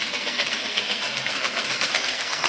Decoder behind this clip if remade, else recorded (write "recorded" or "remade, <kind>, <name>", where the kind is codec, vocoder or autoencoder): remade, codec, SNAC